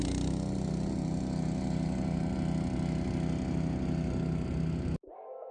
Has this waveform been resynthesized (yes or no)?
no